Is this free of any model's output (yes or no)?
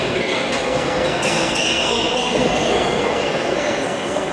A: no